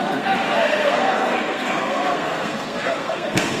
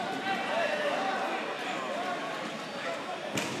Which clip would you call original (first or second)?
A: second